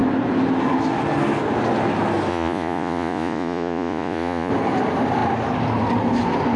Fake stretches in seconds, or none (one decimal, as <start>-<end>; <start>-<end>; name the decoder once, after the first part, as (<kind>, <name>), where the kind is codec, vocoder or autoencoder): 2.3-4.5 (vocoder, Vocos)